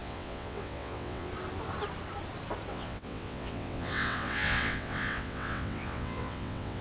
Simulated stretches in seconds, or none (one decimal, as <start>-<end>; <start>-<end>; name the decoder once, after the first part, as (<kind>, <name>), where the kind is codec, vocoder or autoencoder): 0.0-1.3 (vocoder, WaveNeXt); 2.7-6.8